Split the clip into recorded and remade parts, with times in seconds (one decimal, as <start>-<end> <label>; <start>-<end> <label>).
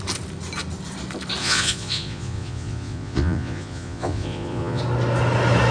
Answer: 0.0-1.4 recorded; 1.4-4.8 remade; 4.8-5.7 recorded